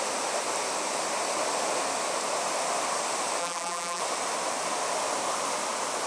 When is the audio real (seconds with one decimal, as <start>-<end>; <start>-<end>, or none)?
0.0-3.4; 4.0-6.1